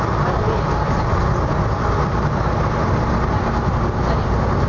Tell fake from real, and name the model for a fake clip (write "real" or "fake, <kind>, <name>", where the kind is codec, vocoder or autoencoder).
real